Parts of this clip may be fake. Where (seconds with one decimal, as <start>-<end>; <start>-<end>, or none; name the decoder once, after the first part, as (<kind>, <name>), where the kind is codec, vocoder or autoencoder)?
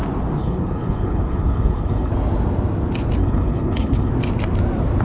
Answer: 0.4-2.1 (codec, HILCodec); 3.2-4.1